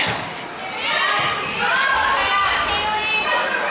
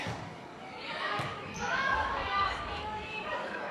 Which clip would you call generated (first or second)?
second